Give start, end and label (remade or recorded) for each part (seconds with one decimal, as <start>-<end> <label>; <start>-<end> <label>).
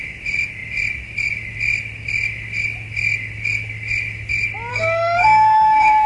0.0-4.7 recorded; 4.7-6.1 remade